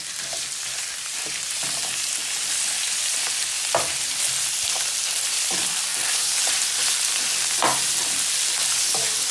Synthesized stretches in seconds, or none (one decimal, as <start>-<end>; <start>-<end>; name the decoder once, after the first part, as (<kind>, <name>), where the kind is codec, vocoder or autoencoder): 5.9-6.8 (vocoder, BigVGAN v2)